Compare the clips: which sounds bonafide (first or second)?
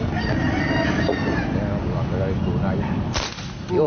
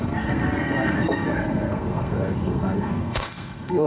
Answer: first